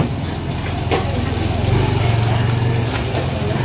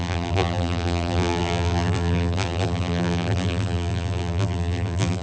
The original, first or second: first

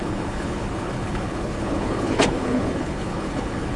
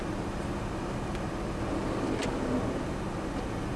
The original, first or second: second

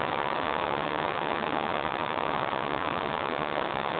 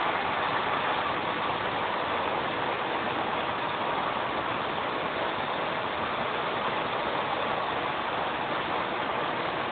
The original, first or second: second